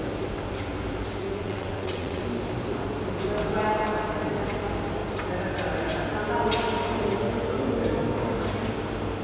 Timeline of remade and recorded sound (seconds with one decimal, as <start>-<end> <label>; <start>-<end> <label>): 0.0-1.4 recorded; 1.4-2.2 remade; 2.2-9.2 recorded